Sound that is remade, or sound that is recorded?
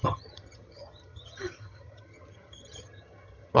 remade